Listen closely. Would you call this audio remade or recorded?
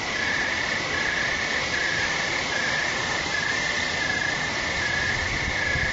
recorded